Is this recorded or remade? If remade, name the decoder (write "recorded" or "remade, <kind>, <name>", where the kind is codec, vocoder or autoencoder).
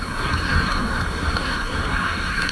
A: remade, codec, SNAC